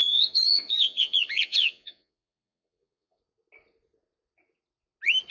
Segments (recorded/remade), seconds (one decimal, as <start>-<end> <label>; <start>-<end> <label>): 0.0-3.2 remade; 3.2-5.3 recorded